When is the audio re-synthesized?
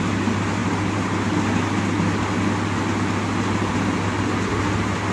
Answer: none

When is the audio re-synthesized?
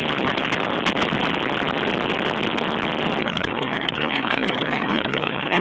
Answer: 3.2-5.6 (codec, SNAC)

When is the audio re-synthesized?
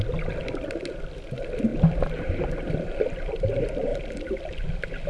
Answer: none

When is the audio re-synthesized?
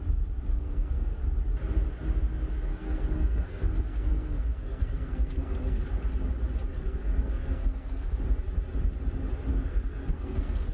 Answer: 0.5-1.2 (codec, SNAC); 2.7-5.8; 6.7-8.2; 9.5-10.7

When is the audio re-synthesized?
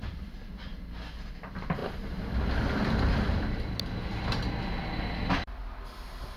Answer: none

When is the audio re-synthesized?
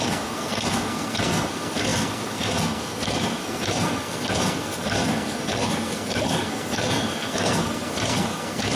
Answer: 0.0-8.8 (codec, SNAC)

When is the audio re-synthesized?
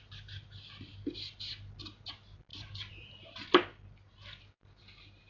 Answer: none